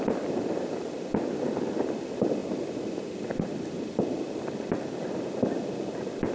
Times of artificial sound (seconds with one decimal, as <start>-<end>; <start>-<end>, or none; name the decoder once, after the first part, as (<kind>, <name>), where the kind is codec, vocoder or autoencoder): none